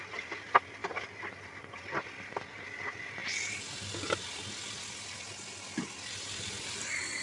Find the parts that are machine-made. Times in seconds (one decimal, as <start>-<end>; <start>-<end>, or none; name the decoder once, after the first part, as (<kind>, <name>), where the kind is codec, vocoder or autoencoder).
none